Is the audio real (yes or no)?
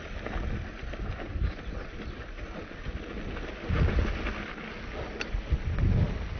yes